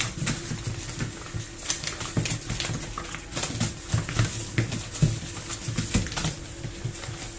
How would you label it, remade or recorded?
recorded